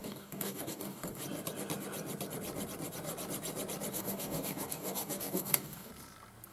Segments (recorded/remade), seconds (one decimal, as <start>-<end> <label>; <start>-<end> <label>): 0.0-1.2 remade; 1.2-3.9 recorded; 3.9-5.9 remade; 5.9-6.5 recorded